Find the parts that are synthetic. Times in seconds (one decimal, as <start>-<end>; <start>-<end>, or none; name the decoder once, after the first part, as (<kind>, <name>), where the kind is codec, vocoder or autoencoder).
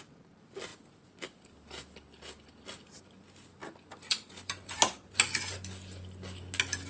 0.7-1.5 (vocoder, BigVGAN v2); 3.6-5.1